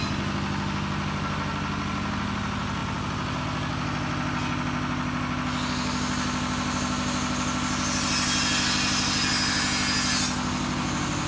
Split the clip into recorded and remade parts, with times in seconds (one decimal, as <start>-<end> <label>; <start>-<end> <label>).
0.0-11.3 recorded